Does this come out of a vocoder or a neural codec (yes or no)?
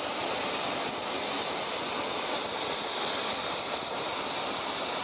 no